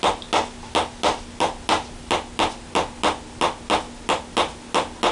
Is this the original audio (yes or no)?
yes